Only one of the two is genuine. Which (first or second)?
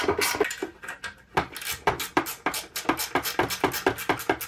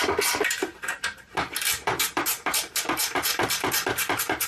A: first